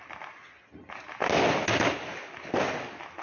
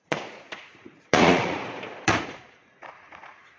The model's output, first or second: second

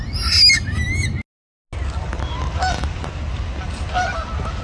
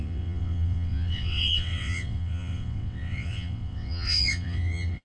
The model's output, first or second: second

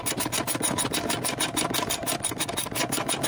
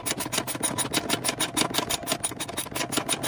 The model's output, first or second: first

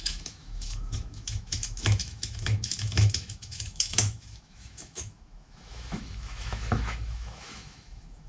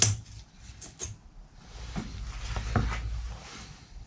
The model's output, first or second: first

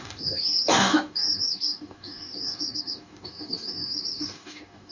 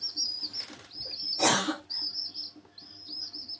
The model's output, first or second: first